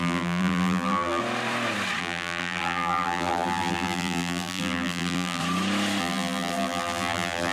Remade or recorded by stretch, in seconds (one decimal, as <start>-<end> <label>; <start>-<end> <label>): 0.0-1.2 remade; 1.2-2.0 recorded; 2.0-5.4 remade; 5.4-6.0 recorded; 6.0-7.5 remade